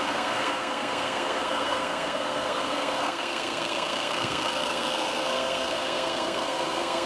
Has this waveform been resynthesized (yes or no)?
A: yes